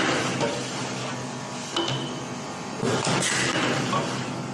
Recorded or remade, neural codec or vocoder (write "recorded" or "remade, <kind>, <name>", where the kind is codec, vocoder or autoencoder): recorded